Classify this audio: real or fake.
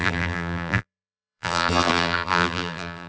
fake